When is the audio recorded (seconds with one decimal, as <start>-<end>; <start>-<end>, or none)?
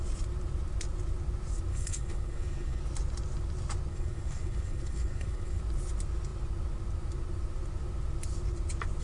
0.0-1.7; 2.8-3.9; 5.6-9.0